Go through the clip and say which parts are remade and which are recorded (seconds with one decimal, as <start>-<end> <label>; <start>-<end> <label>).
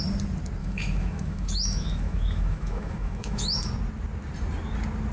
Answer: 0.0-0.6 recorded; 0.6-3.7 remade; 3.7-5.1 recorded